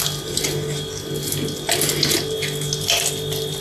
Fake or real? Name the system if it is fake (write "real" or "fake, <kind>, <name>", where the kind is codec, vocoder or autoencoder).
real